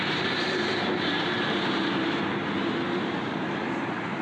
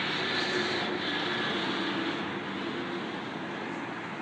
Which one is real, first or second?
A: second